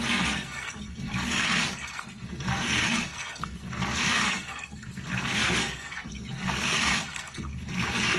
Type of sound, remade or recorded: remade